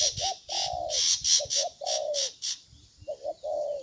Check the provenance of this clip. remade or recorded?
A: recorded